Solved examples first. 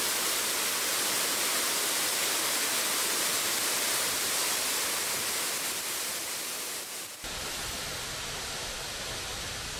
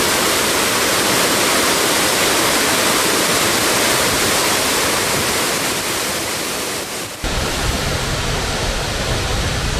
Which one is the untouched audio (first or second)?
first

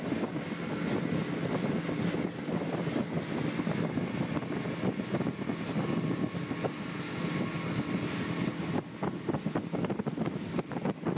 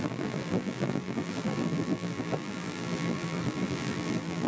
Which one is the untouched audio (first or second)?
first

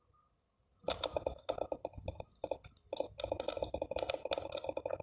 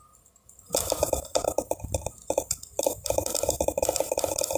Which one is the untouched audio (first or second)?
first